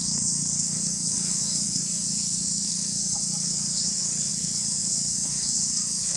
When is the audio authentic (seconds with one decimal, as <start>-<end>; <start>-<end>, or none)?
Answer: none